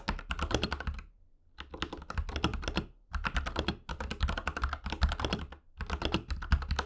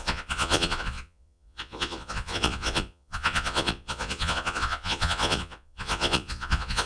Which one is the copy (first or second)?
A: second